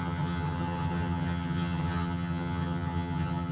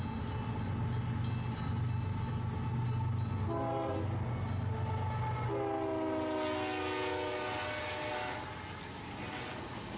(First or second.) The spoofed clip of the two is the first